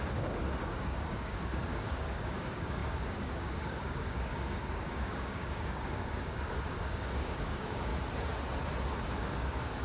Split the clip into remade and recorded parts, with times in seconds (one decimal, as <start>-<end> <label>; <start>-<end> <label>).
0.0-7.9 remade; 7.9-9.1 recorded; 9.1-9.8 remade